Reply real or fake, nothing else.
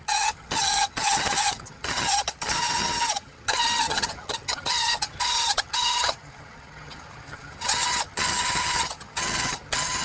fake